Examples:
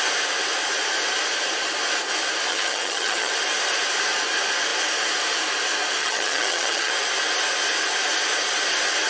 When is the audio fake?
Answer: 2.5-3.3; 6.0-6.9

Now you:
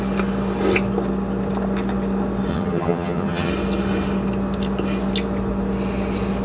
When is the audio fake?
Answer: 2.5-3.5